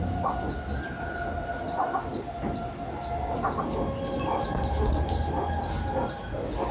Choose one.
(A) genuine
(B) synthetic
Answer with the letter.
A